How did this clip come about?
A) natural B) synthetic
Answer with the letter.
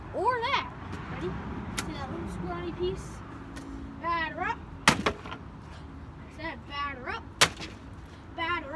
A